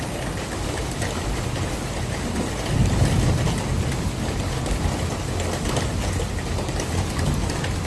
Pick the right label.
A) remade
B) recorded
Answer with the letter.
B